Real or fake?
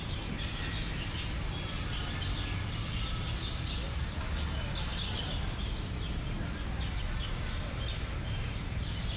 real